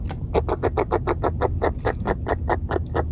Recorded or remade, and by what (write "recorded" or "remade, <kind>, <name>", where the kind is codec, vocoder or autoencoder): recorded